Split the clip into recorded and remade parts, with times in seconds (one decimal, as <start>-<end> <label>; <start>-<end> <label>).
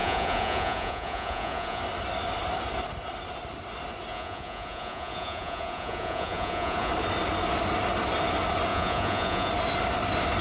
0.0-1.8 remade; 1.8-4.1 recorded; 4.1-6.9 remade; 6.9-8.7 recorded; 8.7-9.5 remade; 9.5-10.4 recorded